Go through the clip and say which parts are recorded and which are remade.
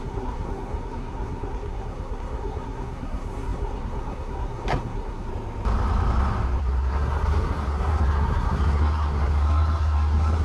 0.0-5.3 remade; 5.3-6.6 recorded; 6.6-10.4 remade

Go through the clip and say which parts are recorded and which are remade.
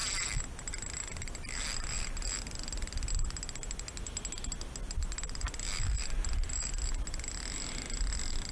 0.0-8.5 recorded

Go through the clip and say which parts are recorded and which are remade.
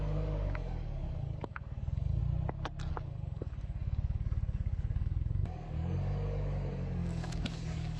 0.0-2.2 remade; 2.2-2.9 recorded; 2.9-8.0 remade